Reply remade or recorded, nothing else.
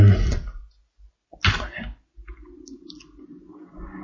recorded